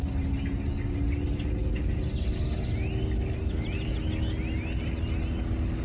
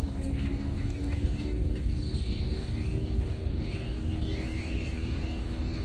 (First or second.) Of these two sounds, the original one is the first